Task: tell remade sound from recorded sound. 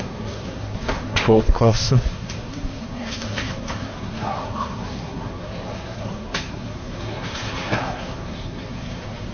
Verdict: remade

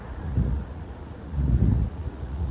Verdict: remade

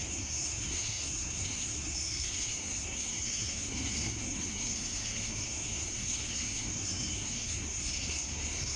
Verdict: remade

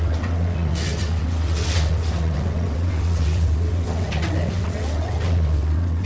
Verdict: remade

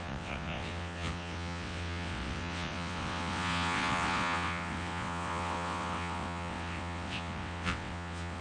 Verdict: remade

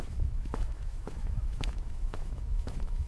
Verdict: remade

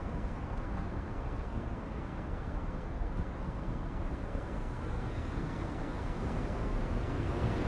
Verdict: remade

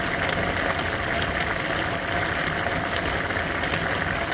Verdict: recorded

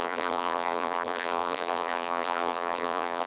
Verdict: remade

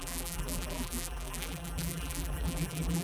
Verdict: remade